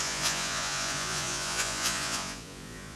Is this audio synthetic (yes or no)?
yes